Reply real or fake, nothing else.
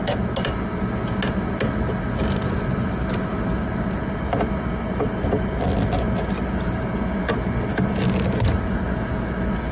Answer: real